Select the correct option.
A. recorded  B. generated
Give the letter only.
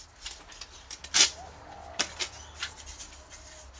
A